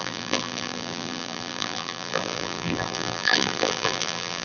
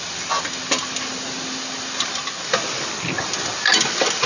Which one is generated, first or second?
first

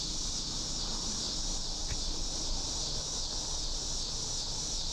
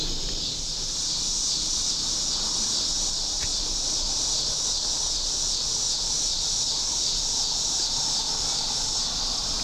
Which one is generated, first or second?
second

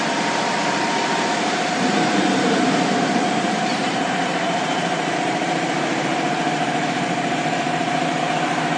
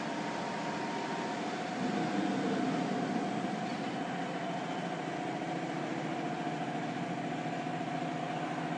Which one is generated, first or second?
first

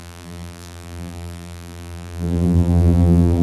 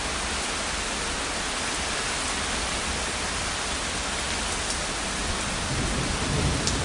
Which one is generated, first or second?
first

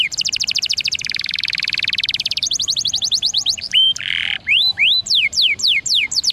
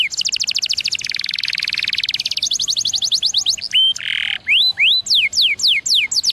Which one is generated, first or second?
first